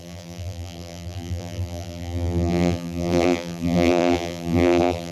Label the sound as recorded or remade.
remade